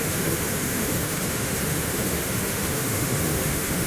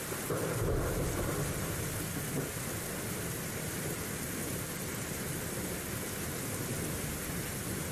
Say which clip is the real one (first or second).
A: second